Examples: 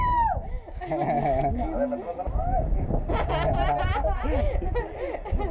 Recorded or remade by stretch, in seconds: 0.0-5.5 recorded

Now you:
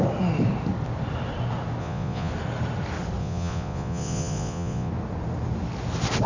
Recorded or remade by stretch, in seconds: 0.0-1.8 recorded; 1.8-2.3 remade; 2.3-3.2 recorded; 3.2-4.9 remade; 4.9-6.3 recorded

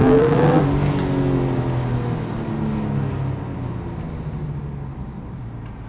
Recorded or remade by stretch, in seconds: 0.0-0.6 remade; 0.6-5.9 recorded

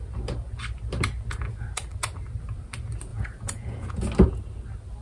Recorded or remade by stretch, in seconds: 0.0-3.1 recorded; 3.1-4.0 remade; 4.0-5.0 recorded

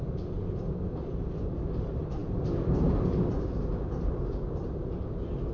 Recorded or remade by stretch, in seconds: 0.0-5.5 recorded

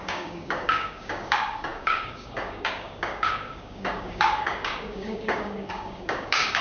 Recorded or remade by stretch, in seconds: 0.0-6.6 remade

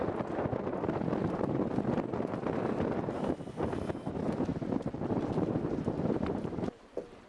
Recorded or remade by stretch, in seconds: 0.0-4.5 recorded; 4.5-7.3 remade